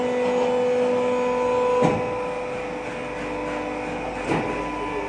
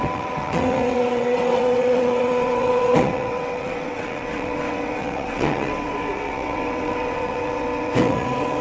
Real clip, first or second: first